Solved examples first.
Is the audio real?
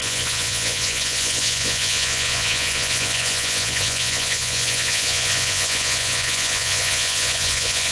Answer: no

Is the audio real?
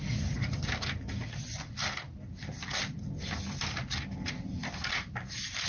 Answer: yes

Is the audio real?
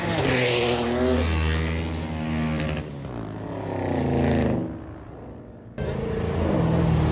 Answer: yes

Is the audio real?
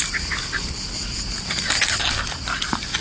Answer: yes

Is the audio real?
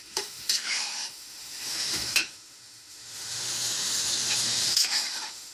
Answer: no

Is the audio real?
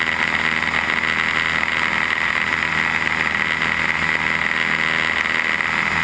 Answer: yes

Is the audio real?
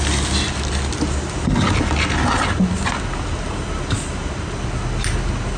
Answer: yes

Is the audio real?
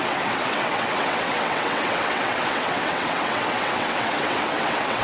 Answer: no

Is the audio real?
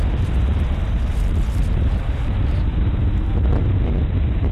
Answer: no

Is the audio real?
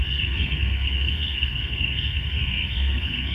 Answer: no